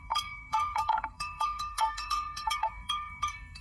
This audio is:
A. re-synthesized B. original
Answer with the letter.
A